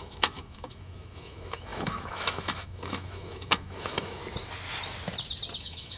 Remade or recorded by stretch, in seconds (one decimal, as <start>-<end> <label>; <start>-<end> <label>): 0.0-4.2 remade; 4.2-5.6 recorded; 5.6-6.0 remade